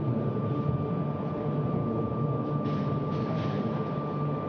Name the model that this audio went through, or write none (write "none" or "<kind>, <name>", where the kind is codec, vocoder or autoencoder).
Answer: none